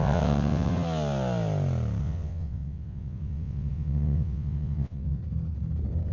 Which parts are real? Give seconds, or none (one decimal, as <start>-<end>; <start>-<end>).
0.7-2.0; 5.2-6.1